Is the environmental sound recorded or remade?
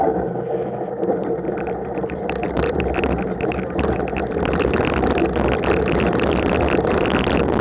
recorded